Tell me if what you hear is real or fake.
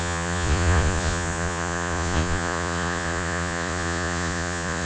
fake